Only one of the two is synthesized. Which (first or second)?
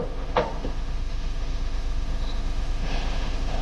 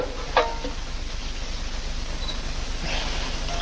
first